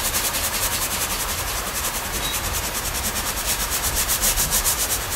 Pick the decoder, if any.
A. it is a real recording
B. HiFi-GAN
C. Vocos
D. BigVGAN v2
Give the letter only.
D